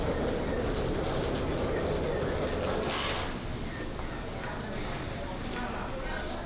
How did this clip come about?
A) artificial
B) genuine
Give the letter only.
B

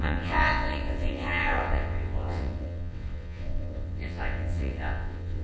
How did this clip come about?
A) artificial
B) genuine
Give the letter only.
A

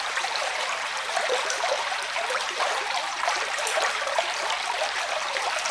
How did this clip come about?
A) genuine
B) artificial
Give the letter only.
B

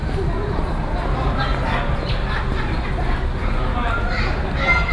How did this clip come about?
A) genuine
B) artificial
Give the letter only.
A